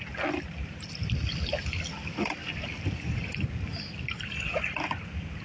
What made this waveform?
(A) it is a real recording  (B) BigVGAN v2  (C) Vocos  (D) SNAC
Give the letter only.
A